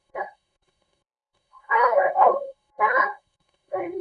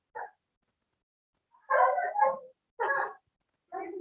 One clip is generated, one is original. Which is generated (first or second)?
first